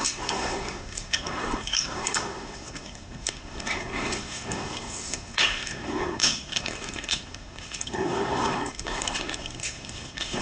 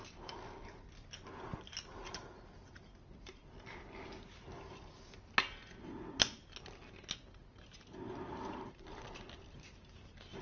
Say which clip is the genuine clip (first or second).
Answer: second